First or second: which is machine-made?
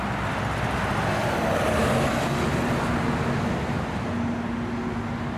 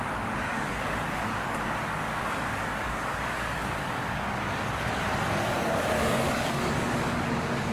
second